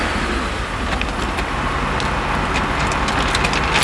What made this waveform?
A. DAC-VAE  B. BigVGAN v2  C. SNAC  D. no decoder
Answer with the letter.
D